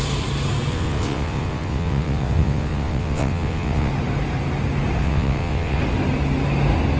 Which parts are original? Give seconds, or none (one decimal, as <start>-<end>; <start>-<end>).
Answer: 0.0-0.7; 3.9-5.0; 5.8-7.0